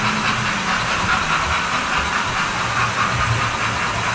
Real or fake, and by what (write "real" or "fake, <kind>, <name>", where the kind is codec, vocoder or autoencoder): real